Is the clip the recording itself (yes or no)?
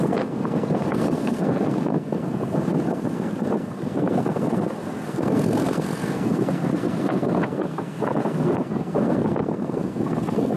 no